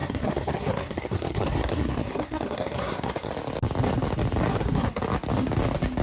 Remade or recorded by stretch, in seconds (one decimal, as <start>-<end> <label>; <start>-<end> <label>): 0.0-3.3 remade; 3.3-4.5 recorded; 4.5-5.0 remade; 5.0-6.0 recorded